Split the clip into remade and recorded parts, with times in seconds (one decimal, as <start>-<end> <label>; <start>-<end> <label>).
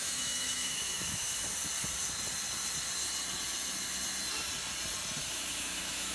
0.0-1.5 remade; 1.5-5.2 recorded; 5.2-6.1 remade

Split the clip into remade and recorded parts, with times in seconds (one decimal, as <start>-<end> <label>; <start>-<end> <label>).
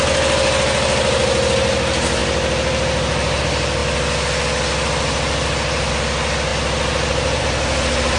0.0-8.2 recorded